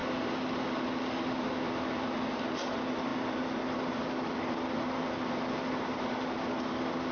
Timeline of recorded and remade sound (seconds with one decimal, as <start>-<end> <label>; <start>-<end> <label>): 0.0-7.1 recorded